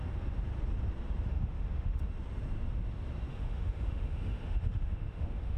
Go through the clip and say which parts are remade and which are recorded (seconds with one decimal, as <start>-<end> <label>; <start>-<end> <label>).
0.0-1.3 recorded; 1.3-2.0 remade; 2.0-3.3 recorded; 3.3-5.6 remade